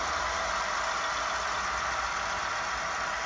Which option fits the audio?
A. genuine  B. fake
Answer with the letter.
A